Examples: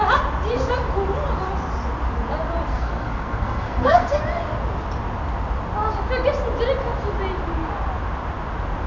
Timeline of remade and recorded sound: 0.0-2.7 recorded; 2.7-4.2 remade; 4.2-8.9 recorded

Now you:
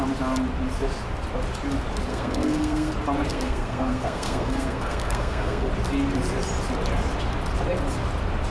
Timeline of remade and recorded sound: 0.0-2.1 recorded; 2.1-2.9 remade; 2.9-3.3 recorded; 3.3-5.7 remade; 5.7-8.5 recorded

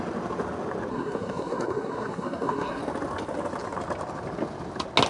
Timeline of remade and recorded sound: 0.0-0.9 recorded; 0.9-2.8 remade; 2.8-5.1 recorded

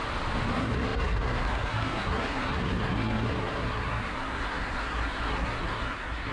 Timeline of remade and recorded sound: 0.0-0.5 recorded; 0.5-6.3 remade

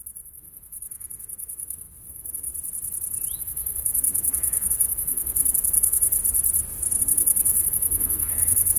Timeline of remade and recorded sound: 0.0-2.5 remade; 2.5-3.4 recorded; 3.4-6.2 remade; 6.2-7.0 recorded; 7.0-8.8 remade